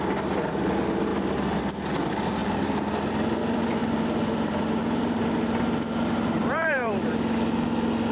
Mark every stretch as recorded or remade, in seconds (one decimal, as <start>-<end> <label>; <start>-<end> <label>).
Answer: 0.0-2.4 recorded; 2.4-3.1 remade; 3.1-3.8 recorded; 3.8-6.9 remade; 6.9-8.1 recorded